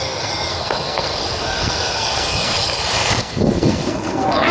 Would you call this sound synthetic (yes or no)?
yes